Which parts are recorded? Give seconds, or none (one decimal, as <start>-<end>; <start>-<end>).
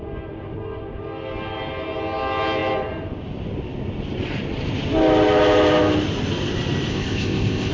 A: 0.0-6.9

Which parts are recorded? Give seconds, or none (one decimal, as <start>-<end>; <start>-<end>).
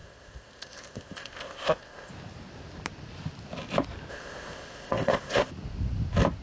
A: 2.1-4.1; 5.5-6.4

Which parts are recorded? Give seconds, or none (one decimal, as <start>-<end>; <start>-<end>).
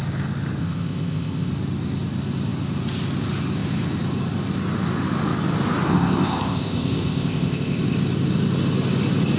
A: 0.0-0.6; 1.5-5.9; 7.8-9.4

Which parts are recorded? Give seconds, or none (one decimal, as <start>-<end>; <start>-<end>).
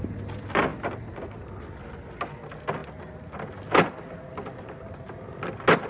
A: 0.0-5.9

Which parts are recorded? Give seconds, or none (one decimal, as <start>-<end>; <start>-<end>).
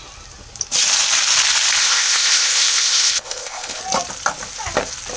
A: 0.0-1.8; 3.8-5.2